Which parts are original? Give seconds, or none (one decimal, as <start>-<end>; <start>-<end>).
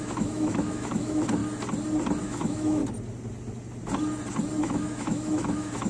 1.4-2.2; 2.8-4.6